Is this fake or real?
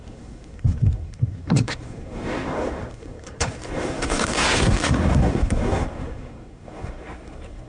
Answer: fake